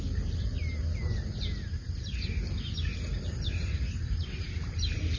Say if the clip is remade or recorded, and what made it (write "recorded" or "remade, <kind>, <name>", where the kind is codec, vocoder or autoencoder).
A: recorded